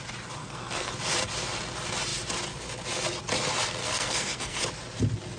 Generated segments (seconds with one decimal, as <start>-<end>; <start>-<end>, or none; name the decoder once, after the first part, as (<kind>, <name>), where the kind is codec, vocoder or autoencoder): 0.4-0.9 (codec, SNAC); 3.8-4.6